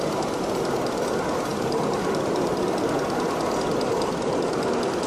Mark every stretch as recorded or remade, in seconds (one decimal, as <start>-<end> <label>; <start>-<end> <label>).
0.0-5.1 recorded